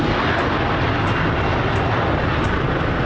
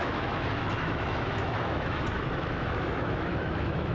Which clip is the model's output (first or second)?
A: second